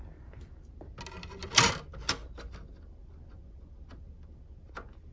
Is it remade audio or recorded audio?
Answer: recorded